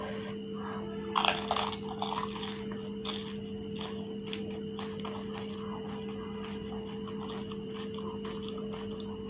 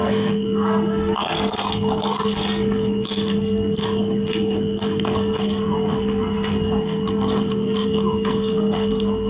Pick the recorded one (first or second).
first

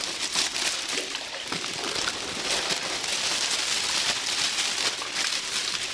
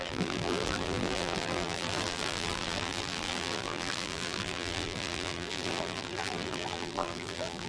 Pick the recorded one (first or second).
first